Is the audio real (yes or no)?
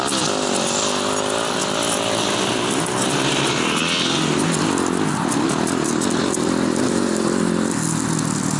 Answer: yes